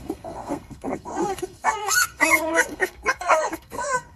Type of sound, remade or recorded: remade